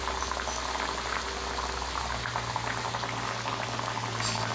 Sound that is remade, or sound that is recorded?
recorded